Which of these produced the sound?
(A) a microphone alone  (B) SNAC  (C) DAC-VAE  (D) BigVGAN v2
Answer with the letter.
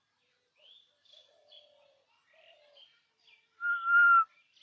D